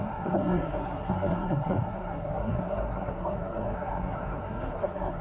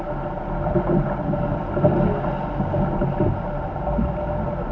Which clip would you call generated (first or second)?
first